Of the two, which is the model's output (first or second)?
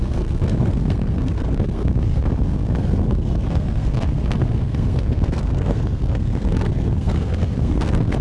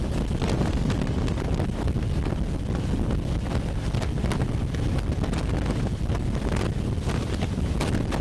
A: first